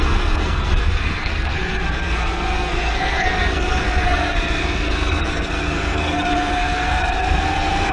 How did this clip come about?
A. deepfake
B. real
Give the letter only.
A